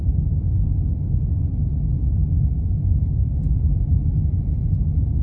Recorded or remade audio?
recorded